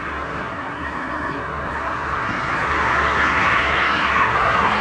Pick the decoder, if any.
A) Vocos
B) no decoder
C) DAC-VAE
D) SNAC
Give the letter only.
D